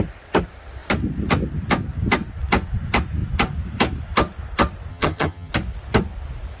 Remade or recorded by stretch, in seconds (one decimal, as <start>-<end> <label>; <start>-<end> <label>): 0.0-4.9 recorded; 4.9-5.5 remade; 5.5-6.6 recorded